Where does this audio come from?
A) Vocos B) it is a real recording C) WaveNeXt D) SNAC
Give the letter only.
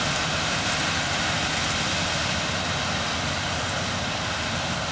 B